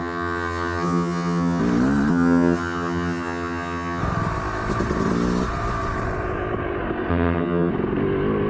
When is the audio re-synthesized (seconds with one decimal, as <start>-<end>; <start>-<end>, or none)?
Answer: 0.0-1.6; 2.1-4.0; 7.1-7.7